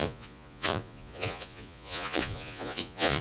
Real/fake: fake